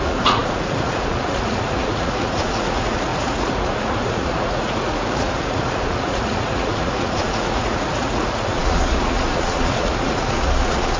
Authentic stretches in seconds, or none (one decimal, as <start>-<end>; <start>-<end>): none